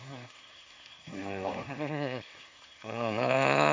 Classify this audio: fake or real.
fake